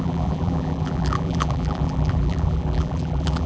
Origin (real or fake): fake